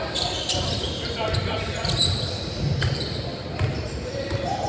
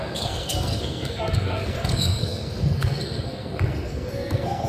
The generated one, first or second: second